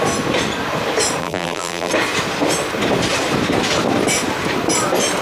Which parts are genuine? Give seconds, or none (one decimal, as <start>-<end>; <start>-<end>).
0.0-1.2; 1.9-5.2